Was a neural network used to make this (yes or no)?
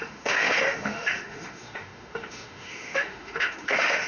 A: yes